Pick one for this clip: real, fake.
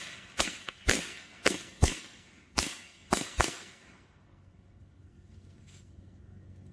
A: fake